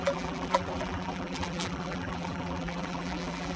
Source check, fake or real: fake